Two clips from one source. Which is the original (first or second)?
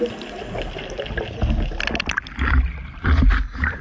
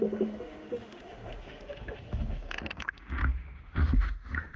first